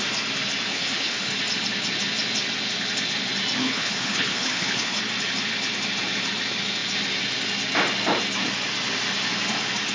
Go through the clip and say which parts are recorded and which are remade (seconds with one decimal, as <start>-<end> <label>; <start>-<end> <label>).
0.0-0.7 recorded; 0.7-1.3 remade; 1.3-3.6 recorded; 3.6-5.0 remade; 5.0-9.9 recorded